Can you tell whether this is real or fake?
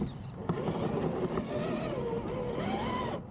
real